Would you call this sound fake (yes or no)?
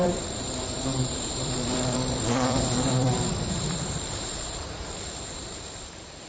yes